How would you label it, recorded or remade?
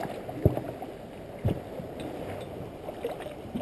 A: recorded